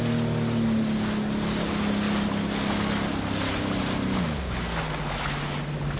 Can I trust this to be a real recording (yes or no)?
yes